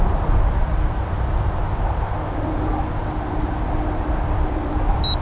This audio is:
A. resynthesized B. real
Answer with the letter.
B